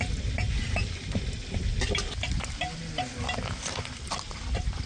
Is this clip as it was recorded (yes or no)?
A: yes